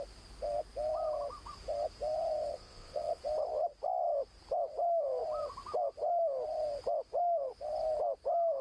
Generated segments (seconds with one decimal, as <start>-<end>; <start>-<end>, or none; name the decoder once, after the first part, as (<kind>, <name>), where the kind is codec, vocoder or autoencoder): 2.5-3.2 (vocoder, WaveNeXt)